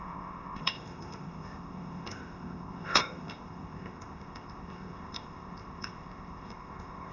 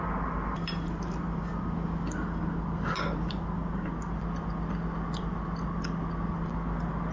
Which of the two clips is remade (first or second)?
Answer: first